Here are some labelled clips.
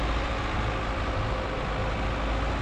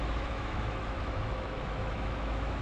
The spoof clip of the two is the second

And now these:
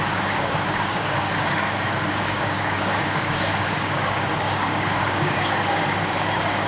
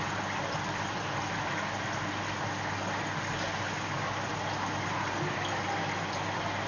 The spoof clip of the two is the first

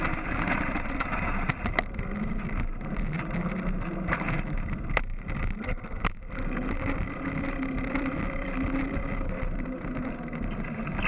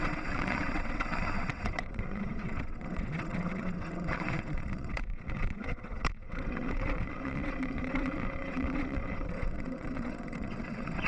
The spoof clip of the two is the second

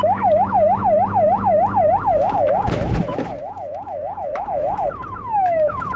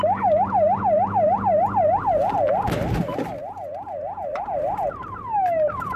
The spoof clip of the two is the first